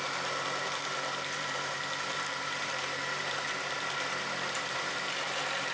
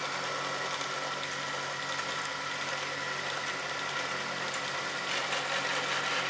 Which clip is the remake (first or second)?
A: first